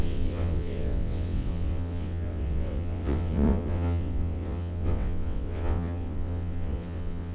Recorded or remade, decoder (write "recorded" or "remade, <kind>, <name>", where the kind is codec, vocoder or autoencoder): remade, vocoder, WaveNeXt